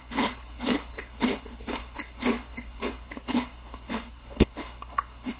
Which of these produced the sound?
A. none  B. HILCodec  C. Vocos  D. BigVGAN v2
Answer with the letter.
B